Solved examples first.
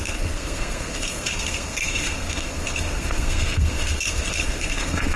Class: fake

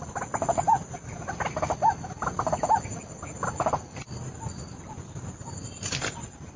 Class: real